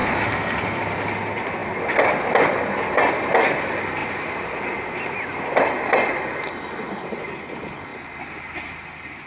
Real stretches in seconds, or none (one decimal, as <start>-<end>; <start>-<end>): 0.8-9.3